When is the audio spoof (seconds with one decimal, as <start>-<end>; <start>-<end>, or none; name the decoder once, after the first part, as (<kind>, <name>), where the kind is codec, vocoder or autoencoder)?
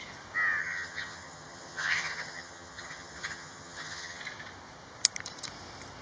0.6-4.2 (vocoder, HiFi-GAN)